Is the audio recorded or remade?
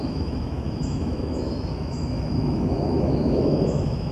remade